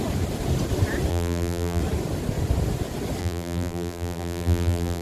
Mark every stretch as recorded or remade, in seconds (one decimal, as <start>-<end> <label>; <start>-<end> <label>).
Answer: 0.0-1.1 recorded; 1.1-1.8 remade; 1.8-3.2 recorded; 3.2-5.0 remade